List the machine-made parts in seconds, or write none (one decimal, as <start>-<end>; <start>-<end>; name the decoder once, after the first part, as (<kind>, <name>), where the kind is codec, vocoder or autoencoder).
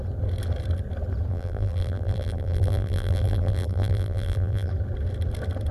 1.3-4.7 (vocoder, BigVGAN v2)